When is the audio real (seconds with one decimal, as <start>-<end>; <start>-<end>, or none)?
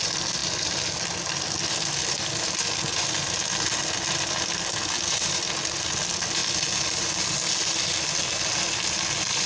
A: 0.0-9.5